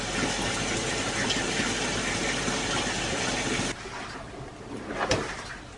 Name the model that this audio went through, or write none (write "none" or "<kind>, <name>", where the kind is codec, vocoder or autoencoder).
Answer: none